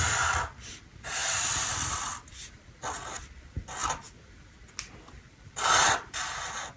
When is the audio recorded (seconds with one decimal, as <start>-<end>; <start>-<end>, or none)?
0.0-1.2; 2.7-6.8